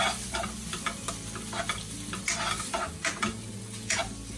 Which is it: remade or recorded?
recorded